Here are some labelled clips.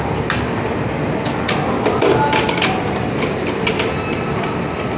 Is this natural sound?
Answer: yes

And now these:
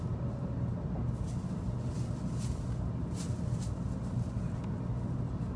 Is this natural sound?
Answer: yes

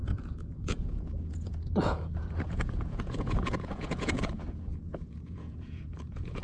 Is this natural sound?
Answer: no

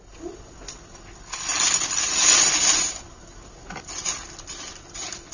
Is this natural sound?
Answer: yes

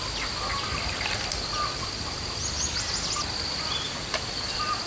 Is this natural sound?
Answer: yes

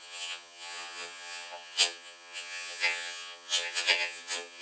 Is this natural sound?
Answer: no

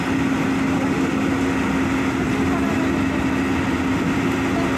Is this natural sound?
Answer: yes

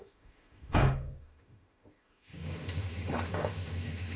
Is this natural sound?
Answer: no